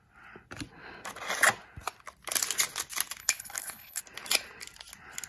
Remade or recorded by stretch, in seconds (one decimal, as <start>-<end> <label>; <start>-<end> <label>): 0.0-3.2 recorded; 3.2-4.0 remade; 4.0-5.3 recorded